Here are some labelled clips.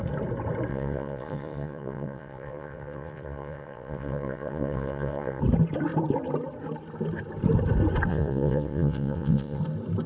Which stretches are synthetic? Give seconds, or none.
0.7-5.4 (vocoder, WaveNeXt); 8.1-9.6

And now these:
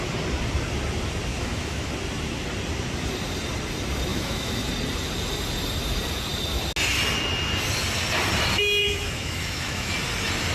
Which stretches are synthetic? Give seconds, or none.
1.3-1.9 (autoencoder, DAC-VAE); 4.1-4.7; 8.8-9.9

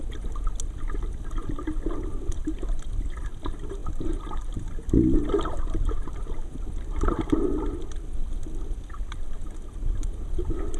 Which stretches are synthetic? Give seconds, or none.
none